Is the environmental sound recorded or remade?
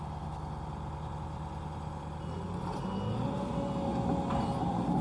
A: recorded